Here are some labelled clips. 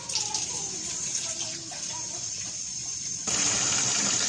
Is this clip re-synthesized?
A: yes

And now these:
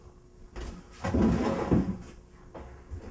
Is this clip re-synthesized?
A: no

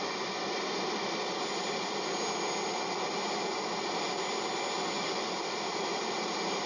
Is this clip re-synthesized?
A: no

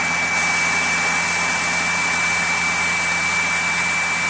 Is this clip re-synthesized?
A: no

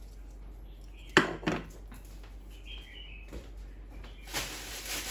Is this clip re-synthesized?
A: no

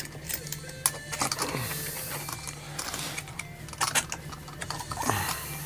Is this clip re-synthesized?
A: no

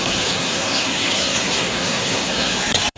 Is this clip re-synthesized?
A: yes